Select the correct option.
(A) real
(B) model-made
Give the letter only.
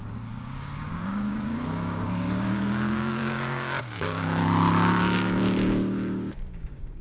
B